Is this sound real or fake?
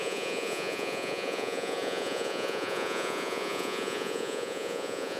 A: fake